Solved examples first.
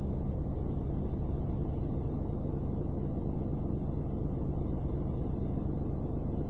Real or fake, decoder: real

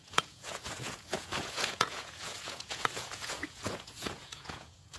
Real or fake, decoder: fake, vocoder, Vocos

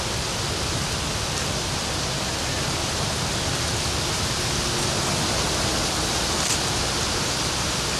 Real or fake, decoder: real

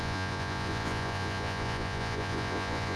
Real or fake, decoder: fake, vocoder, Vocos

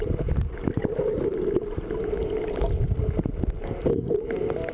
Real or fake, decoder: real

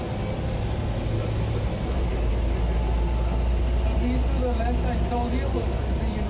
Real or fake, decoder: real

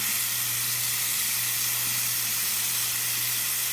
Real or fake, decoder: real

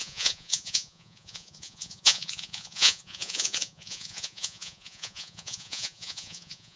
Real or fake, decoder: fake, vocoder, Vocos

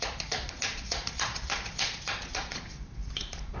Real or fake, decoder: fake, vocoder, Vocos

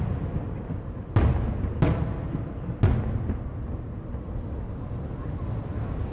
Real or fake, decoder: real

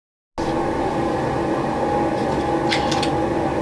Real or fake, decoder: real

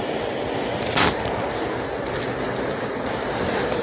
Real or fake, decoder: real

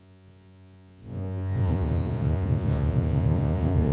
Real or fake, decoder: fake, vocoder, Vocos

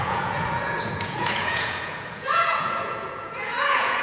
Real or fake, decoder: fake, vocoder, Vocos